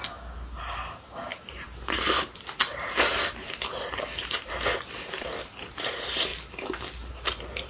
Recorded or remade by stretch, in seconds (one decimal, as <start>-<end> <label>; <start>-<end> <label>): 0.0-0.6 recorded; 0.6-6.3 remade; 6.3-7.1 recorded; 7.1-7.7 remade